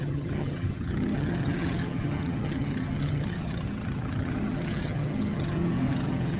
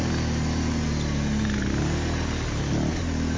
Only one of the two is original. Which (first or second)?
second